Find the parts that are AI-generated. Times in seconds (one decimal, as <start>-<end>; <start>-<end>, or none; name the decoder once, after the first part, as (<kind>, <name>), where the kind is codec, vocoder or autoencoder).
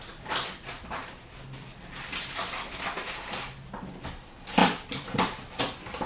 4.6-5.6 (vocoder, BigVGAN v2)